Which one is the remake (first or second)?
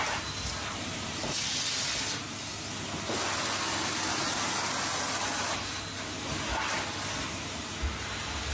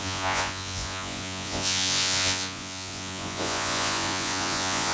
second